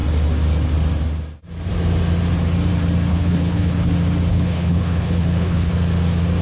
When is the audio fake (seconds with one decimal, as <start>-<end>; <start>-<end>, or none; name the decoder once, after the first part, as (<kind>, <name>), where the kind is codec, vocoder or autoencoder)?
3.1-3.9 (codec, HILCodec); 4.3-5.7